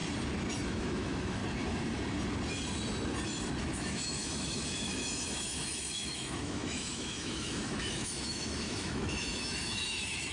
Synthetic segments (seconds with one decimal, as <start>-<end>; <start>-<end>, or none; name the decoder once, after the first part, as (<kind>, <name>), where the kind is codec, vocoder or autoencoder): 0.7-1.4 (autoencoder, DAC-VAE); 3.6-10.3